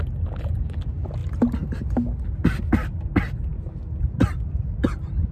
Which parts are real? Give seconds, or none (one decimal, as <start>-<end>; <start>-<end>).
0.0-5.3